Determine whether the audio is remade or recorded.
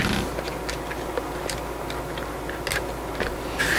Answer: recorded